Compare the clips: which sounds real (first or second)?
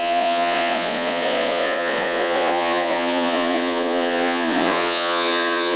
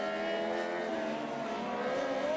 second